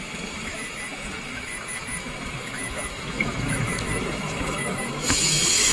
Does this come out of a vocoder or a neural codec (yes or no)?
yes